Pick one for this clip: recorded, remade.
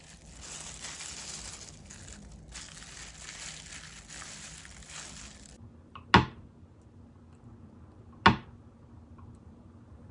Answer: recorded